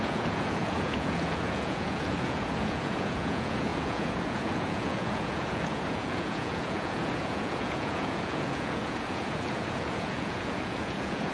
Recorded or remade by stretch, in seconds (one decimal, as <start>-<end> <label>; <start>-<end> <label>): 0.0-11.3 remade